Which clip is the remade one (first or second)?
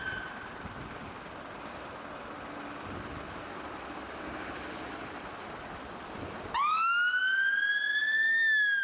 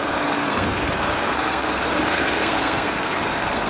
second